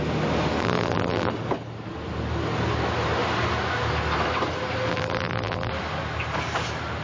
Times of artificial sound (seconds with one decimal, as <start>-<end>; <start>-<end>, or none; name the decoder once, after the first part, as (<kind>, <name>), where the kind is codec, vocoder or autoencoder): 0.6-1.3 (vocoder, BigVGAN v2); 4.9-5.7